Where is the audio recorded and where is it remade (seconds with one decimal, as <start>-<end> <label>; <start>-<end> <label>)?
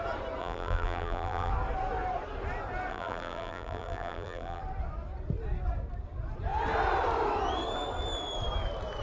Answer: 0.0-0.4 recorded; 0.4-1.5 remade; 1.5-2.9 recorded; 2.9-4.6 remade; 4.6-9.0 recorded